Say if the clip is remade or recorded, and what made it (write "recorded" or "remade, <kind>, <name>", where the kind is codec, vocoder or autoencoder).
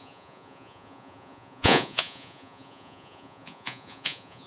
remade, vocoder, Vocos